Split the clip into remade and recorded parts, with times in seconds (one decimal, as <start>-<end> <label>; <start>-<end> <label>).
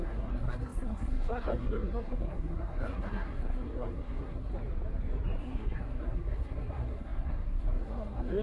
0.0-4.5 remade; 4.5-5.4 recorded; 5.4-8.4 remade